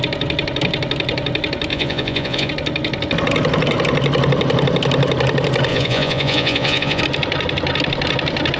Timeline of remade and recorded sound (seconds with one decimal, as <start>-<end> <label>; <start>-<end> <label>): 0.0-1.7 recorded; 1.7-2.5 remade; 2.5-5.7 recorded; 5.7-7.0 remade; 7.0-8.6 recorded